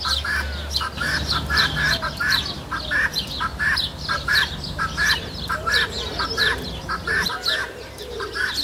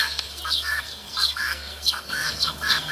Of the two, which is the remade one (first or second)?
second